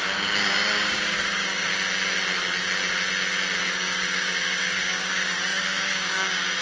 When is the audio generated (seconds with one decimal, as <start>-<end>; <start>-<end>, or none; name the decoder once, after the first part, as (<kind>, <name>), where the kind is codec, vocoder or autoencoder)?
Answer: 0.0-1.7 (codec, DAC); 3.6-6.6